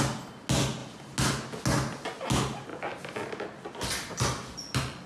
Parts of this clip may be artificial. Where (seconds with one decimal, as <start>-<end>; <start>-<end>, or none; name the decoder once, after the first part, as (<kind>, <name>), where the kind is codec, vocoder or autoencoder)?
none

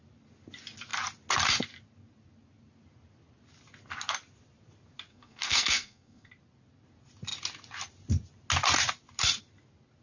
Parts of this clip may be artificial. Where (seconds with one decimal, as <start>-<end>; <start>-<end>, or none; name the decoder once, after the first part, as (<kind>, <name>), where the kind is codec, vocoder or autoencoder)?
5.1-6.3 (codec, SNAC)

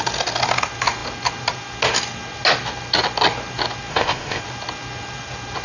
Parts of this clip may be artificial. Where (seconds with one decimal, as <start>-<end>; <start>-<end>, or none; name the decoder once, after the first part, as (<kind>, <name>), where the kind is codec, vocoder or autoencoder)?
3.9-4.4 (codec, ZipCodec)

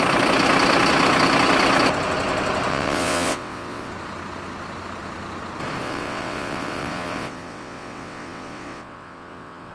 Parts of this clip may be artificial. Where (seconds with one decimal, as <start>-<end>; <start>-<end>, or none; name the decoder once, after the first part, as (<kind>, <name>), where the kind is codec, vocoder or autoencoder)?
2.7-3.9 (vocoder, WaveNeXt); 5.8-9.7

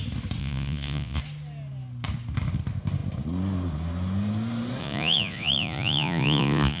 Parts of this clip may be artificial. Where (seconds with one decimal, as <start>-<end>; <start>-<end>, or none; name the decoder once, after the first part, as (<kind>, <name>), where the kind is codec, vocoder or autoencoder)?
0.4-1.2 (vocoder, Vocos); 4.8-6.8

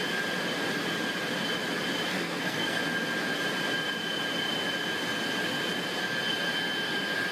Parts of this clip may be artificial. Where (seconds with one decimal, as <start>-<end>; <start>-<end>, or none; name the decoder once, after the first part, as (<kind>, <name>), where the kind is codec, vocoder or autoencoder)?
2.1-2.8 (codec, SNAC)

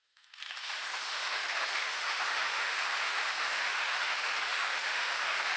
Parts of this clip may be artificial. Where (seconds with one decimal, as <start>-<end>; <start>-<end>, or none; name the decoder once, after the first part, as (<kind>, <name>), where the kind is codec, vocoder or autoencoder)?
0.0-5.6 (autoencoder, DAC-VAE)